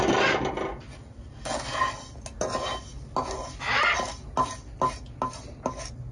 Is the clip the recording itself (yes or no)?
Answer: yes